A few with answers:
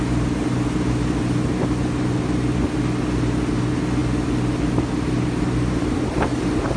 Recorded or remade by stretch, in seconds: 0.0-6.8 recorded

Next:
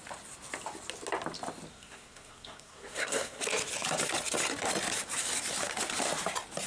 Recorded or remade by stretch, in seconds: 0.0-1.7 recorded; 1.7-3.4 remade; 3.4-6.7 recorded

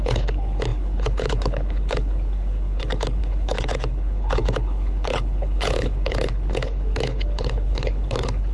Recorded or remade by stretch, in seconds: 0.0-8.5 remade

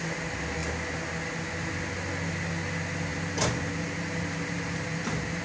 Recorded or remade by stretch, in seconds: 0.0-3.1 recorded; 3.1-5.4 remade

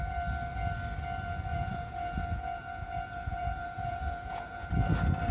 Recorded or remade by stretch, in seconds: 0.0-1.5 recorded; 1.5-4.7 remade; 4.7-5.3 recorded

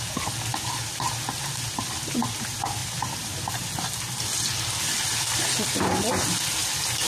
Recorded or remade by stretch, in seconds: 0.0-6.6 recorded; 6.6-7.1 remade

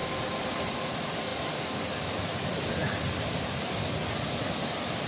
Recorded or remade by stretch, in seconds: 0.0-5.1 recorded

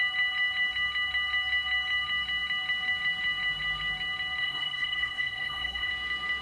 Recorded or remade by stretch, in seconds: 0.0-4.4 recorded; 4.4-5.9 remade; 5.9-6.4 recorded